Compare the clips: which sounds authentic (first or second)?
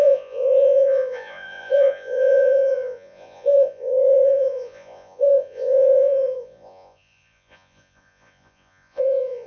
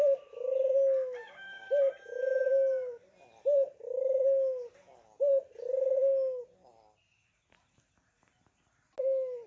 second